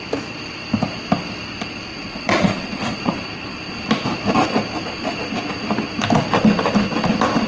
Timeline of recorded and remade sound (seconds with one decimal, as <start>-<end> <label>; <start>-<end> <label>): 0.0-1.9 recorded; 1.9-3.2 remade; 3.2-7.5 recorded

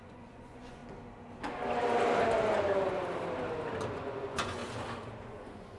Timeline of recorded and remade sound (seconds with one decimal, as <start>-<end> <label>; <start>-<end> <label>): 0.0-0.8 remade; 0.8-3.9 recorded; 3.9-4.6 remade; 4.6-5.2 recorded; 5.2-5.8 remade

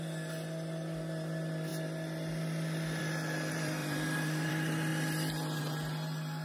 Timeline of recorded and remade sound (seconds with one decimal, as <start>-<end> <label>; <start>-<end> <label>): 0.0-3.8 recorded; 3.8-4.5 remade; 4.5-6.4 recorded

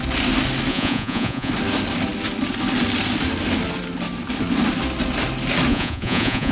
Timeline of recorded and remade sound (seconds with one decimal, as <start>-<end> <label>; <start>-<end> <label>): 0.0-0.7 recorded; 0.7-1.5 remade; 1.5-5.7 recorded; 5.7-6.5 remade

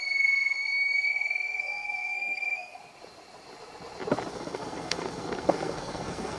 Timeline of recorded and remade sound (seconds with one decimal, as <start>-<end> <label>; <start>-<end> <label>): 0.0-2.8 remade; 2.8-4.3 recorded; 4.3-6.4 remade